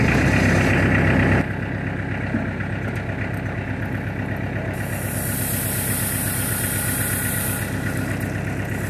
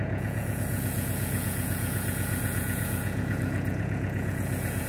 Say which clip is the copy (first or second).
second